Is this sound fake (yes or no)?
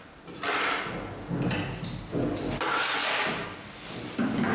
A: no